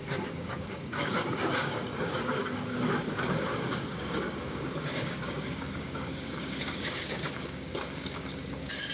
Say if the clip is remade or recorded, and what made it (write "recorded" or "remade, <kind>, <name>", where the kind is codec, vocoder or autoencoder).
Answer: remade, codec, DAC